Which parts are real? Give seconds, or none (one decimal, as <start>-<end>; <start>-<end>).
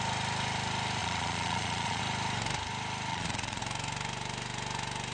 0.0-1.0; 2.0-3.1; 3.6-5.1